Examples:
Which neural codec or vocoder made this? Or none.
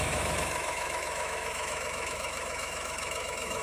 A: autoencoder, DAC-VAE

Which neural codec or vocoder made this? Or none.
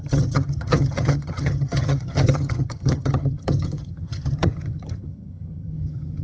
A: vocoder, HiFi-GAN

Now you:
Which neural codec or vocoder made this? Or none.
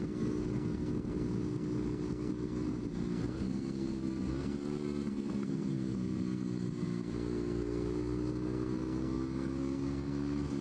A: codec, SNAC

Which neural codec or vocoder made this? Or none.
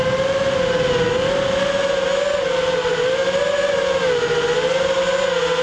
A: none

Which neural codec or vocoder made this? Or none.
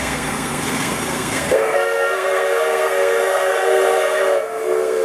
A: codec, SNAC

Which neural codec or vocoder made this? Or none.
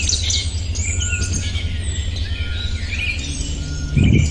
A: none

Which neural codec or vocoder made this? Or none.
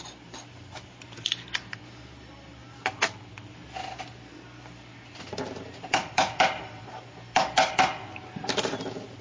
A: vocoder, BigVGAN v2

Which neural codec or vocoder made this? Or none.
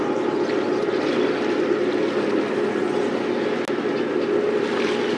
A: none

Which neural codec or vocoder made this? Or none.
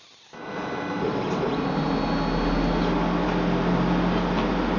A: none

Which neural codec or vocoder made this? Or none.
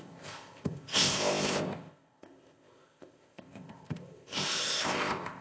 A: codec, ZipCodec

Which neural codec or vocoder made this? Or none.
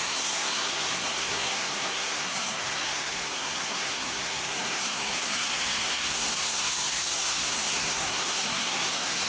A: codec, SNAC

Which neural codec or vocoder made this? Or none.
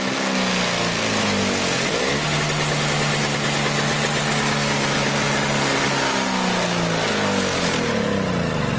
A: none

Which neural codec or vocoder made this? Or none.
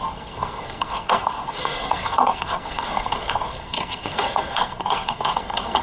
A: codec, SNAC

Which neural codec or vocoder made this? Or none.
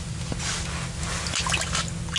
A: none